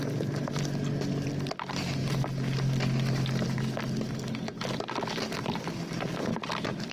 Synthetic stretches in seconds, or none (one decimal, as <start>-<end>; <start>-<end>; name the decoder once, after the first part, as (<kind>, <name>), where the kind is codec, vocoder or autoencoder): none